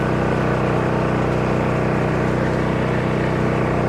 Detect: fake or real real